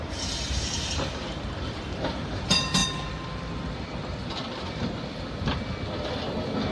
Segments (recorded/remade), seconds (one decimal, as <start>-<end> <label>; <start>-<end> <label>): 0.0-2.8 remade; 2.8-6.7 recorded